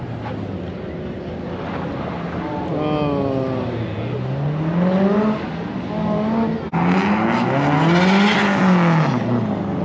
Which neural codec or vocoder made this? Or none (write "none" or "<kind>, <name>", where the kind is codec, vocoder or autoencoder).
none